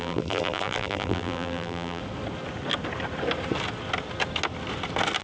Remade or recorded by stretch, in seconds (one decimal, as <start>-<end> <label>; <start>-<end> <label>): 0.0-2.0 remade; 2.0-5.2 recorded